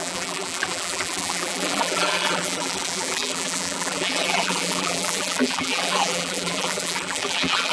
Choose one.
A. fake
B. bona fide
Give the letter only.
A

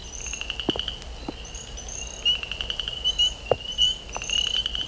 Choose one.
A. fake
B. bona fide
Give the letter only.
B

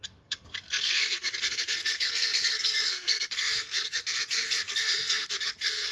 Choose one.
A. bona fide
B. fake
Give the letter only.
B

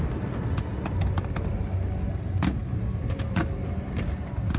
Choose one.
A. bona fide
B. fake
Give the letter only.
A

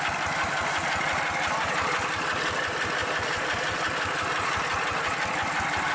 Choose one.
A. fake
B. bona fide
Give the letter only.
B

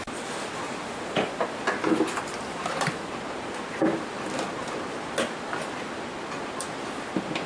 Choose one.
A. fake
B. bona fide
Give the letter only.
A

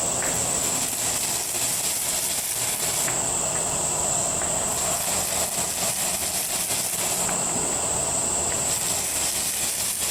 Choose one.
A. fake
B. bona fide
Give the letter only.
B